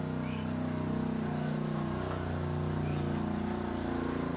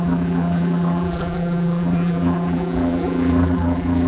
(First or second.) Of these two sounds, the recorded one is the first